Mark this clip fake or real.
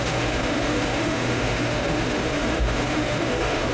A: fake